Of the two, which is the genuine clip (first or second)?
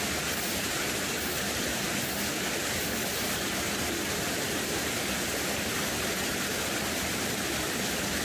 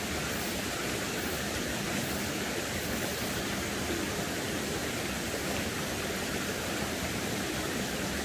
first